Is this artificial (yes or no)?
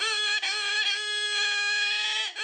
no